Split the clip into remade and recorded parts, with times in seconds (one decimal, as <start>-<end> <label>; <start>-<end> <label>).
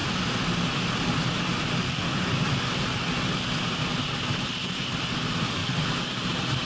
0.0-6.6 recorded